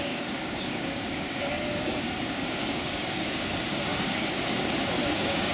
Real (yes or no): no